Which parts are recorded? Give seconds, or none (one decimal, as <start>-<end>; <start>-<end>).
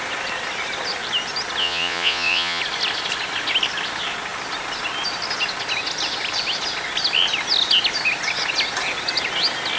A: 0.0-1.6; 2.6-9.8